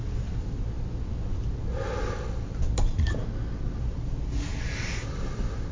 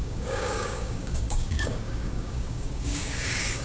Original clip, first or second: first